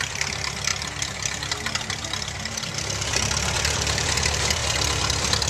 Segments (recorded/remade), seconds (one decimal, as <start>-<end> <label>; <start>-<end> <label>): 0.0-5.5 remade